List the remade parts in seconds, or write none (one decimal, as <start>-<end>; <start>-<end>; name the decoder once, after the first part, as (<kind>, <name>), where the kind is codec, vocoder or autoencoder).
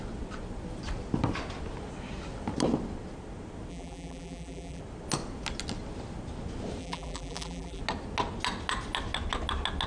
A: 3.7-4.8 (vocoder, BigVGAN v2); 6.8-7.8